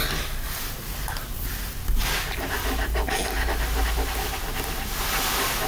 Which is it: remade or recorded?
recorded